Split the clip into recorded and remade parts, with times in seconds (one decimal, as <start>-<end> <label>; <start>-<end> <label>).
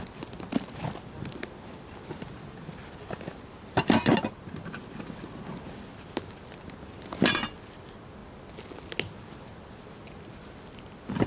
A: 0.0-11.3 recorded